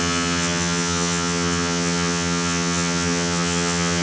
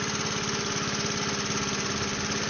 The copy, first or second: first